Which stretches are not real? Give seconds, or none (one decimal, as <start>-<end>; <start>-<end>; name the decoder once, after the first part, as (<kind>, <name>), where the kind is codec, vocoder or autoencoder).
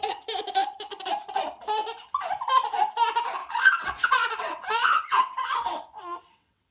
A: 3.4-6.7 (vocoder, WaveNeXt)